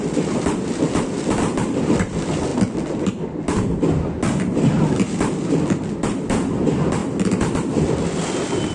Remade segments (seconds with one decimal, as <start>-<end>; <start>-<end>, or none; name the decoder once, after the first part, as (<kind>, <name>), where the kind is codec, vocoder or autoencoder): 0.0-2.5 (vocoder, BigVGAN v2); 5.5-7.0; 7.9-8.7